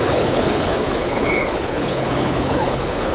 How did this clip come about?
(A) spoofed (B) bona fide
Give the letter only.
A